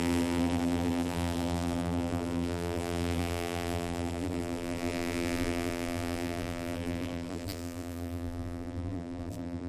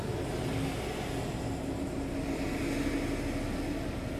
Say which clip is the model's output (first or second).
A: first